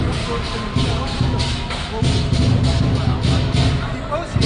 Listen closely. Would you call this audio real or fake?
real